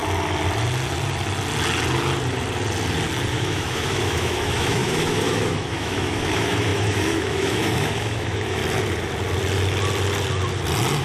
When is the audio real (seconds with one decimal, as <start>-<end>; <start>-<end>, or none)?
0.0-3.3; 8.6-11.0